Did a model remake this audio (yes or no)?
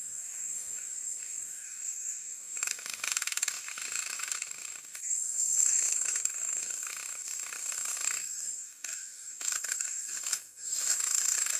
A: yes